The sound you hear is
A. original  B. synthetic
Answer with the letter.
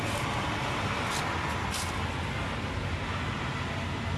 A